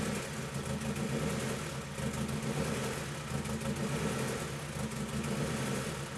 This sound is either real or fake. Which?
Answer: real